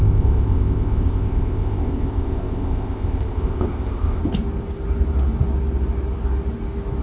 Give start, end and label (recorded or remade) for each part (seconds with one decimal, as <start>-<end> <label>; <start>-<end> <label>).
0.0-4.2 remade; 4.2-7.0 recorded